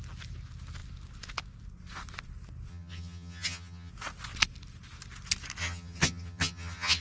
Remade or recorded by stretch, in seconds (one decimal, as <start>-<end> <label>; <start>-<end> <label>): 0.0-2.7 recorded; 2.7-3.9 remade; 3.9-5.6 recorded; 5.6-7.0 remade